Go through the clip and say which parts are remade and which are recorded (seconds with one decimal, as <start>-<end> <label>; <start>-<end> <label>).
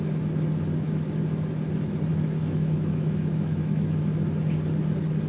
0.0-2.1 recorded; 2.1-4.0 remade; 4.0-5.3 recorded